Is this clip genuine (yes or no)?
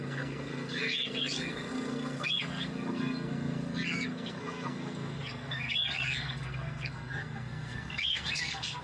no